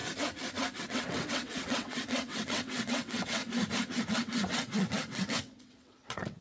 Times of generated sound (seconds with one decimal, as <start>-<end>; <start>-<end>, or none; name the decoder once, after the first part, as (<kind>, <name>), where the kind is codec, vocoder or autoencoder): 0.8-3.4 (vocoder, WaveNeXt); 4.0-6.4

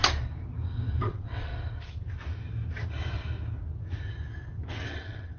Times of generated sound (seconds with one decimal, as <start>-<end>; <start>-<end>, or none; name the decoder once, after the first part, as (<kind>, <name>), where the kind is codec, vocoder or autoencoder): 1.0-1.5 (vocoder, WaveNeXt); 4.7-5.4

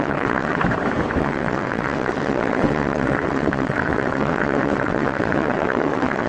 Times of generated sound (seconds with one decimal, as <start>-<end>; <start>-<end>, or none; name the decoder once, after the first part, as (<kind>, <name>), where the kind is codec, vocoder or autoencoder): 0.0-0.6 (vocoder, WaveNeXt); 1.2-6.3

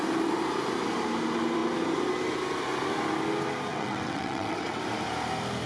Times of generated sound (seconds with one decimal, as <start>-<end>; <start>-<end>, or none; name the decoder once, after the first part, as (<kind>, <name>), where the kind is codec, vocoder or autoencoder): 3.7-4.8 (vocoder, WaveNeXt)

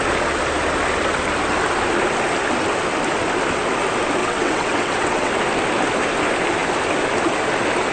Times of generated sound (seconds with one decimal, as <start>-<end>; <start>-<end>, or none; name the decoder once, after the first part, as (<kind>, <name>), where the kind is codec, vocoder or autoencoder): 4.2-5.3 (vocoder, WaveNeXt)

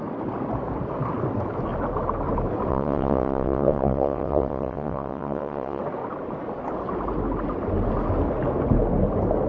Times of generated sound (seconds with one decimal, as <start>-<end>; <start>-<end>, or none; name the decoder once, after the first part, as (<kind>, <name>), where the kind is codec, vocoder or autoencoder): 2.7-5.8 (vocoder, WaveNeXt)

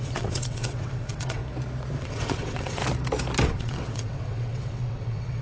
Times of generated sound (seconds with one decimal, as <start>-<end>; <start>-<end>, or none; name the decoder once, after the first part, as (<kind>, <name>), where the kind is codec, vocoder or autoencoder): 0.0-1.4 (vocoder, WaveNeXt); 2.0-2.8; 3.4-5.4

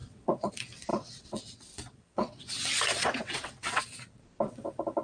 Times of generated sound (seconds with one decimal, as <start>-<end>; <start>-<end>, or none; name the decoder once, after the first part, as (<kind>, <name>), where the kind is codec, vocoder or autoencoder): 0.0-0.5 (vocoder, WaveNeXt); 0.9-3.8